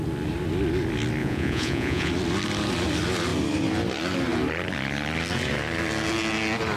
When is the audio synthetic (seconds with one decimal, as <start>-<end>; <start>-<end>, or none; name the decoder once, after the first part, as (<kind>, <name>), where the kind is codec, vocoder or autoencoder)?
1.2-2.1 (vocoder, Vocos)